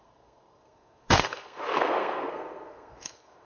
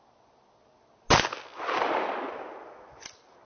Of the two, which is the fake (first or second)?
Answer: first